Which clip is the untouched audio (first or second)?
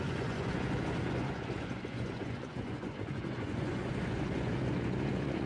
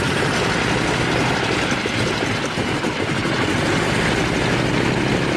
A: second